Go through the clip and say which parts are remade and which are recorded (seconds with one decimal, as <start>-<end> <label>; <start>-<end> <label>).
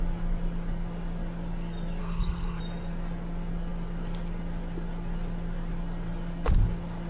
0.0-2.0 recorded; 2.0-2.6 remade; 2.6-7.1 recorded